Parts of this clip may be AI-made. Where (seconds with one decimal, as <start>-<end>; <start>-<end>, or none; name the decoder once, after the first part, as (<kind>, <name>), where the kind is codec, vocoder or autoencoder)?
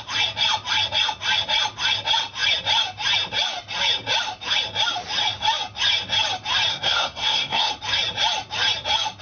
6.7-7.7 (codec, SNAC)